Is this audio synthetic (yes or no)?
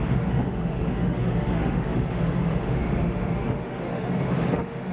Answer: yes